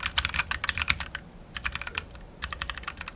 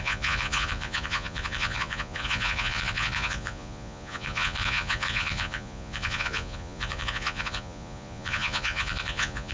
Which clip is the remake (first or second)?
second